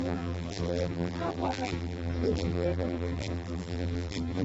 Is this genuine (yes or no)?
no